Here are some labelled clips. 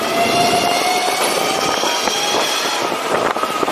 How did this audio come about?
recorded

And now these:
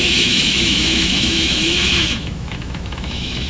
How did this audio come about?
remade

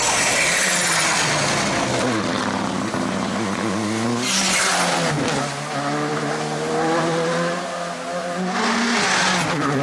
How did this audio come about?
recorded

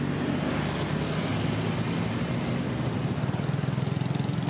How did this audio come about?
recorded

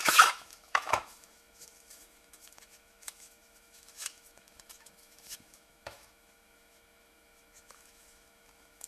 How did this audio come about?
remade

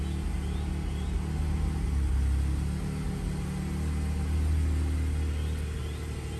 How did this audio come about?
recorded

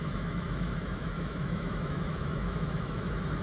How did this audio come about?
remade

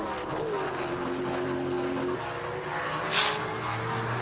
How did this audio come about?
recorded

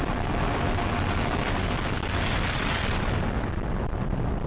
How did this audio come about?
recorded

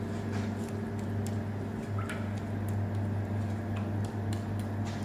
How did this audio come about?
recorded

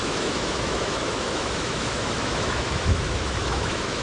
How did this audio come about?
remade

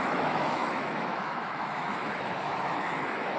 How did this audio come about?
remade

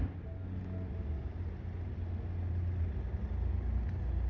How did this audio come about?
recorded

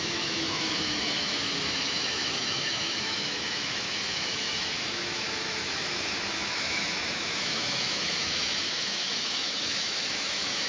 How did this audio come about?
remade